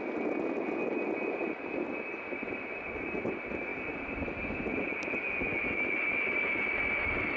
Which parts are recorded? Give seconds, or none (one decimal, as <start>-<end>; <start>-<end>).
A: 0.0-7.4